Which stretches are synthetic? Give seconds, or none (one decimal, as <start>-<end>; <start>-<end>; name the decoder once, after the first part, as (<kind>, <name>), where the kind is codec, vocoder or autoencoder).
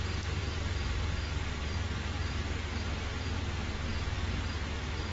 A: 0.4-3.1 (vocoder, BigVGAN v2); 3.9-4.5